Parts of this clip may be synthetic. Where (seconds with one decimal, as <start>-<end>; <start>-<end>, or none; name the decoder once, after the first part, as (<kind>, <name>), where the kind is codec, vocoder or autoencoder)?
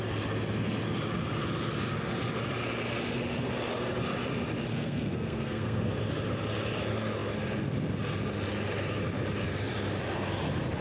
4.7-5.9 (codec, SNAC)